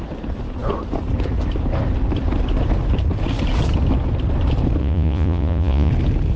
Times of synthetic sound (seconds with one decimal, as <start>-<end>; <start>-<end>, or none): 4.8-5.9